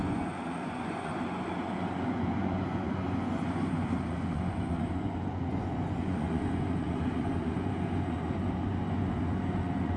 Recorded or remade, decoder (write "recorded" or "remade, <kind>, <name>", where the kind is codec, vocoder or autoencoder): remade, vocoder, Vocos